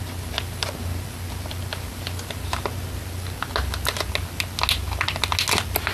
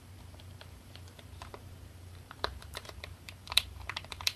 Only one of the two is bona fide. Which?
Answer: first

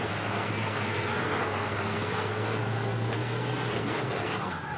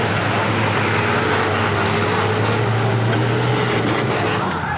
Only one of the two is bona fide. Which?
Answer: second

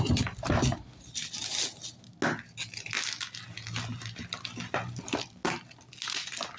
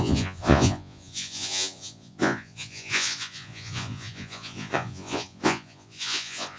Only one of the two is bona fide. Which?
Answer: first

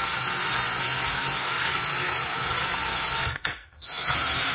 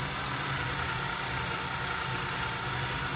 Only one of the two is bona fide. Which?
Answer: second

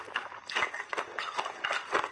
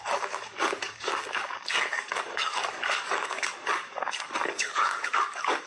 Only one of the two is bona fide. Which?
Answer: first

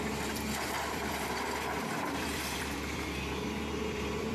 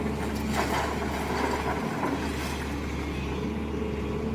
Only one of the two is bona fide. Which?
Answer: second